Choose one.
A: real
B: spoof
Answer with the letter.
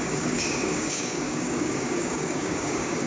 B